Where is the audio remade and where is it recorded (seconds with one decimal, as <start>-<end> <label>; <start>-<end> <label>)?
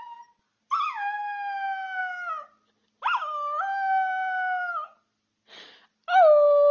0.0-6.7 recorded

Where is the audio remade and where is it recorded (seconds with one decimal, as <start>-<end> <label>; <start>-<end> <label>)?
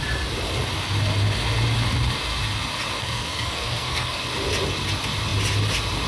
0.0-3.0 recorded; 3.0-4.2 remade; 4.2-6.1 recorded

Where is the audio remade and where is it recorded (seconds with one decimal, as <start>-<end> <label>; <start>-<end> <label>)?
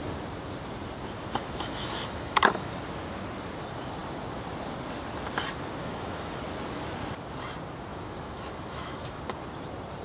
0.0-1.4 recorded; 1.4-2.7 remade; 2.7-5.8 recorded; 5.8-6.4 remade; 6.4-7.9 recorded; 7.9-9.2 remade; 9.2-10.0 recorded